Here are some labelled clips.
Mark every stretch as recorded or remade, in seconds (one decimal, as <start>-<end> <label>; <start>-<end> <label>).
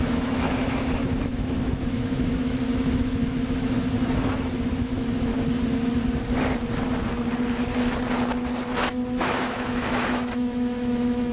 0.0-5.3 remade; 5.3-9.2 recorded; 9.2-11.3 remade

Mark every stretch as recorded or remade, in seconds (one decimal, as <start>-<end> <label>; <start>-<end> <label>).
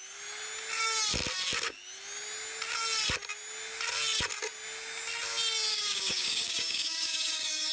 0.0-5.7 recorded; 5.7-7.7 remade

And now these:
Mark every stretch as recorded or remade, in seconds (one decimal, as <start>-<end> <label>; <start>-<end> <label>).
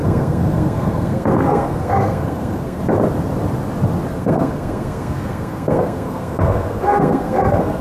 0.0-2.8 remade; 2.8-4.1 recorded; 4.1-7.8 remade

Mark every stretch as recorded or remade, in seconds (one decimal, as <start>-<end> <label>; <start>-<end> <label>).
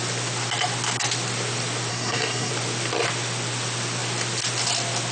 0.0-1.9 recorded; 1.9-2.5 remade; 2.5-5.1 recorded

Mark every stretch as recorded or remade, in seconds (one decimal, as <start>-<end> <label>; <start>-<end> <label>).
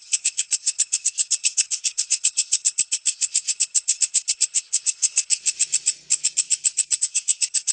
0.0-5.4 remade; 5.4-7.0 recorded; 7.0-7.7 remade